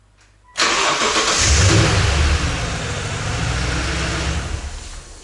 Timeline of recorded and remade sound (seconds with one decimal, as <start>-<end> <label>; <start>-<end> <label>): 0.0-5.2 recorded